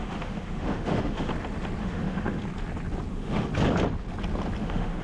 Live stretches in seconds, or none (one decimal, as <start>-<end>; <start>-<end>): 1.3-1.8; 2.4-3.1; 3.5-4.6